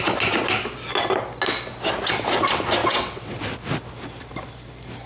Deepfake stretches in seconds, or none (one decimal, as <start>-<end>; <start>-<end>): 2.8-3.4